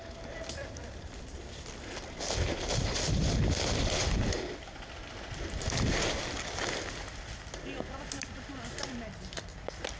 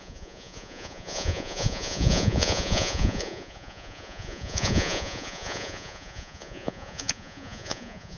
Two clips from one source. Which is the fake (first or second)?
second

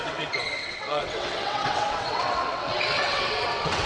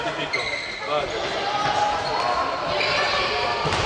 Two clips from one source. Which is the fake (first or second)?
first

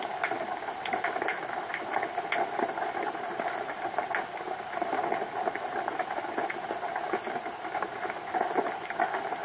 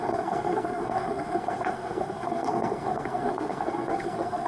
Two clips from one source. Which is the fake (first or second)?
second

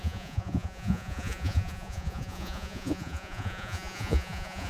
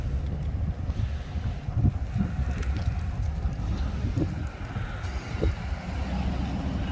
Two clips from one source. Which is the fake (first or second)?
first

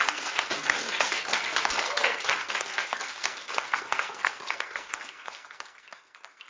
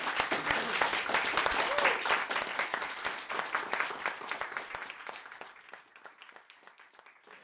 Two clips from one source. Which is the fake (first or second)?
first